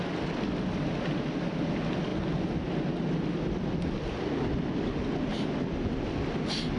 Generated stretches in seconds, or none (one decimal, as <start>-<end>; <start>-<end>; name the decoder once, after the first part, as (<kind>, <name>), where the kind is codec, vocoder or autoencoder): none